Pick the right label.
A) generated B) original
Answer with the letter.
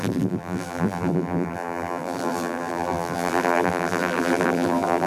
A